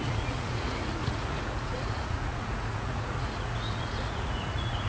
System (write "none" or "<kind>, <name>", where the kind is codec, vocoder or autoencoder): vocoder, Vocos